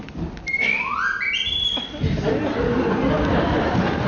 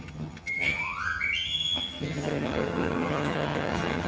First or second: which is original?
first